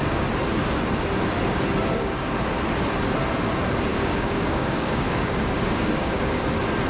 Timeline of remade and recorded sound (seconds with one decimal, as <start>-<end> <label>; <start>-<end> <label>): 0.0-3.9 recorded; 3.9-6.4 remade; 6.4-6.9 recorded